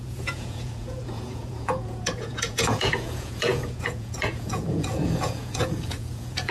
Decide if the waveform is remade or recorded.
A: remade